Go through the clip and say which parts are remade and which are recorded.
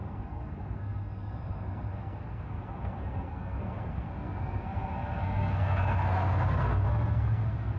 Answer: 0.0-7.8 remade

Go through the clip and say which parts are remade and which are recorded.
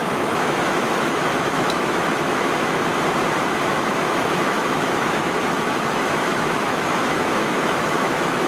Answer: 0.0-2.9 remade; 2.9-3.5 recorded; 3.5-8.5 remade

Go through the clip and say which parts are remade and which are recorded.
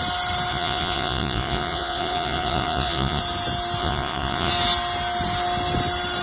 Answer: 0.0-0.5 recorded; 0.5-3.2 remade; 3.2-3.8 recorded; 3.8-4.5 remade; 4.5-6.2 recorded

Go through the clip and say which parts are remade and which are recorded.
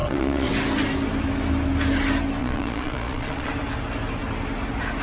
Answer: 0.0-0.5 remade; 0.5-2.4 recorded; 2.4-3.5 remade; 3.5-5.0 recorded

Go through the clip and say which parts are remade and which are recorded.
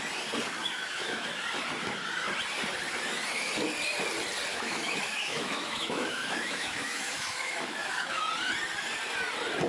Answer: 0.0-0.6 recorded; 0.6-1.4 remade; 1.4-4.5 recorded; 4.5-8.3 remade; 8.3-9.7 recorded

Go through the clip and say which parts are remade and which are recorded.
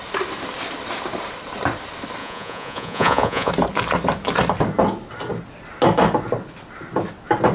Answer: 0.0-2.2 recorded; 2.2-3.5 remade; 3.5-7.5 recorded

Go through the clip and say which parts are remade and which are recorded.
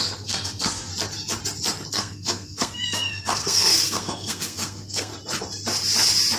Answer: 0.0-0.9 remade; 0.9-1.9 recorded; 1.9-5.1 remade; 5.1-6.4 recorded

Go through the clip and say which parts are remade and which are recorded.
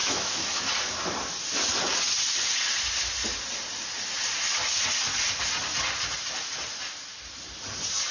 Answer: 0.0-0.7 remade; 0.7-8.1 recorded